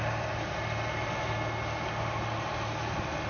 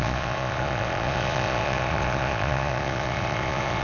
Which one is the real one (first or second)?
first